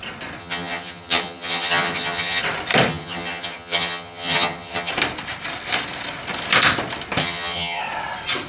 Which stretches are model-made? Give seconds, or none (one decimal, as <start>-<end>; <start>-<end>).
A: 0.4-2.4; 2.9-4.9; 7.2-7.8